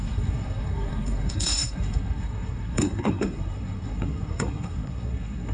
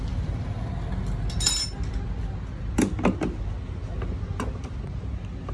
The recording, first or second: second